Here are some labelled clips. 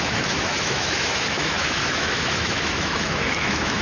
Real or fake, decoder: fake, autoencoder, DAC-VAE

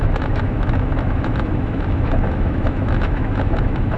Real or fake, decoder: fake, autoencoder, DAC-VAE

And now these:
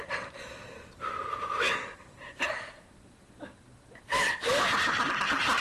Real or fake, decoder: real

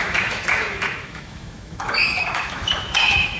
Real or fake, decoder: fake, autoencoder, DAC-VAE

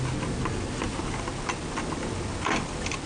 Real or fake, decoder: real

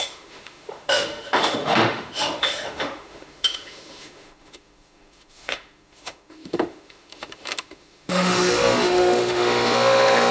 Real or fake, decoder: fake, autoencoder, DAC-VAE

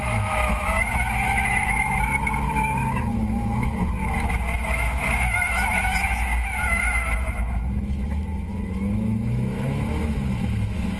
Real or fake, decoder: fake, autoencoder, DAC-VAE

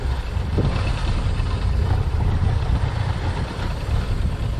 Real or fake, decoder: real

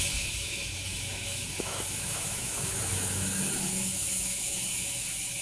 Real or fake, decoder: fake, autoencoder, DAC-VAE